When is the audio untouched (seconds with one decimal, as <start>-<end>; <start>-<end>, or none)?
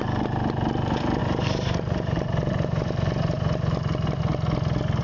0.0-1.2; 4.2-5.0